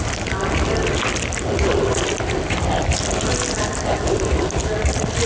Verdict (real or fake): fake